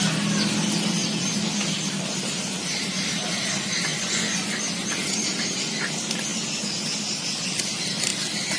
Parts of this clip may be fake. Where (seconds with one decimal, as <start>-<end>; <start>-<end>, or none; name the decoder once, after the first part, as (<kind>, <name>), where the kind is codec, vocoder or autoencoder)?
3.9-4.6 (vocoder, Vocos)